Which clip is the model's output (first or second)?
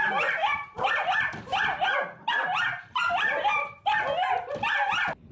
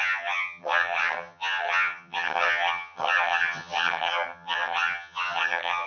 second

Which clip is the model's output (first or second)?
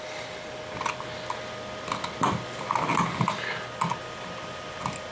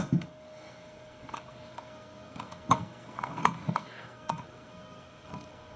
second